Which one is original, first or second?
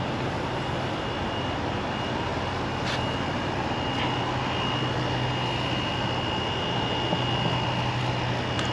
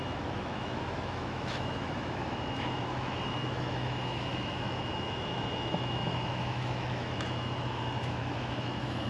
first